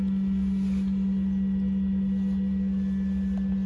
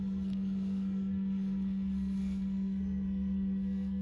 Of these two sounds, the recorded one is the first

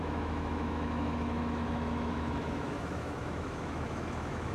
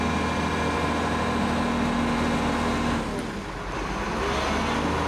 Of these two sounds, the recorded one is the second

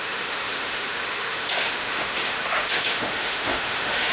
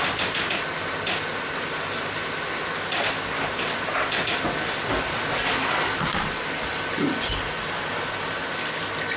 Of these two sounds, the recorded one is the second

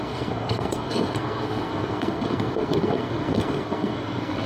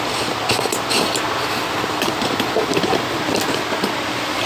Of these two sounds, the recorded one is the second